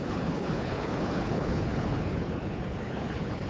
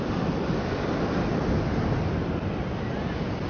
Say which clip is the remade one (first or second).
first